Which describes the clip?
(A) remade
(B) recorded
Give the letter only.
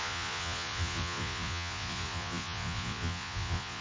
A